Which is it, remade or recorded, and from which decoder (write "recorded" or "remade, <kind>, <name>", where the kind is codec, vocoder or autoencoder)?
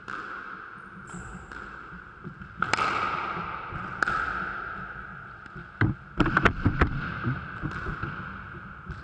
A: recorded